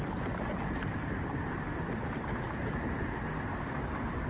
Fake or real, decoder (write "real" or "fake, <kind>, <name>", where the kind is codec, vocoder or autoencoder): real